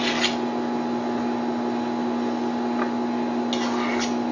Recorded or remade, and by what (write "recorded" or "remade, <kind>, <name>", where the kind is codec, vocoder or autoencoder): recorded